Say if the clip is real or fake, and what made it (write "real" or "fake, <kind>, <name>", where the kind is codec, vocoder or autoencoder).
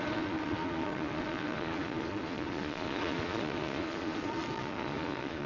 fake, vocoder, Vocos